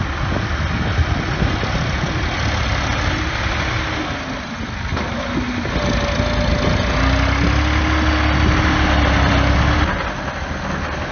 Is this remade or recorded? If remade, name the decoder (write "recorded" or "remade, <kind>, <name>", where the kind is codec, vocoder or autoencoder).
recorded